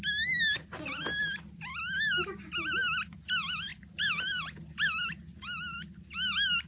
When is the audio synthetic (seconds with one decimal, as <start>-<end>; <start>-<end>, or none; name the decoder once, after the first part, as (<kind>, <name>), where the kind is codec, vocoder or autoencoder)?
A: none